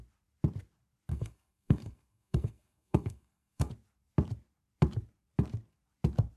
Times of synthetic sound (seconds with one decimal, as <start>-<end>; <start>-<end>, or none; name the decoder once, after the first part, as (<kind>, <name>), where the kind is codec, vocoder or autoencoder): 1.1-3.7 (codec, SNAC)